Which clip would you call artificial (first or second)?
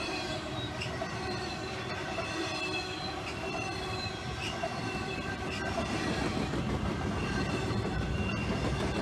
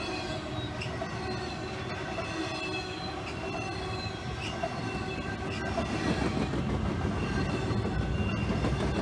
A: first